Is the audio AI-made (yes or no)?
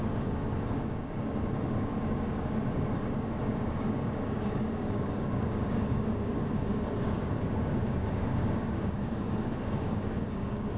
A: yes